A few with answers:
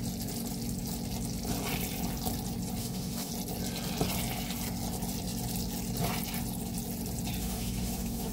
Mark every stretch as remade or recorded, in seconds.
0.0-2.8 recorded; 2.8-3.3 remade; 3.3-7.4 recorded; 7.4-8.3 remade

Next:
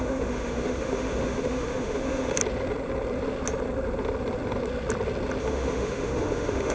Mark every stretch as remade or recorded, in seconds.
0.0-2.4 remade; 2.4-5.4 recorded; 5.4-6.7 remade

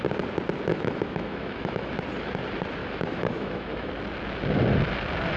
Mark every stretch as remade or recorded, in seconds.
0.0-0.7 recorded; 0.7-1.9 remade; 1.9-2.8 recorded; 2.8-3.9 remade; 3.9-5.4 recorded

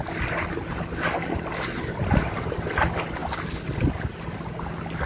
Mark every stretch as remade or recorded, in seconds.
0.0-5.1 recorded